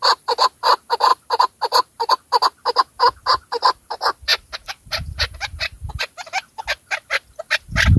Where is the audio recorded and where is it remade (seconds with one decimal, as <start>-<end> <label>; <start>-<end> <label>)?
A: 0.0-1.1 recorded; 1.1-2.1 remade; 2.1-4.3 recorded; 4.3-5.9 remade; 5.9-8.0 recorded